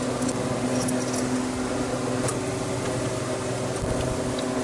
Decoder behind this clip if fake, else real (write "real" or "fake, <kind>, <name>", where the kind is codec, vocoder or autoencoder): real